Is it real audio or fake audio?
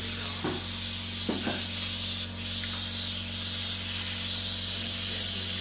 real